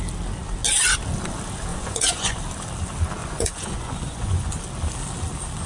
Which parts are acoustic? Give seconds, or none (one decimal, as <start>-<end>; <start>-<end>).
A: 0.0-1.7; 2.4-3.2; 4.6-5.7